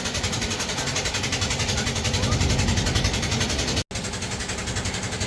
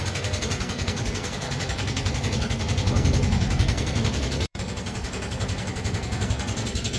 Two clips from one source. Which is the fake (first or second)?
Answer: second